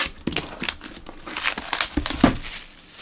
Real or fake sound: real